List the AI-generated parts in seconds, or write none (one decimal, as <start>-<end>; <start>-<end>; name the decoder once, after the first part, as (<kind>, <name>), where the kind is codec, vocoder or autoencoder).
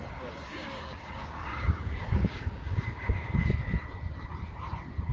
0.5-3.6 (codec, DAC)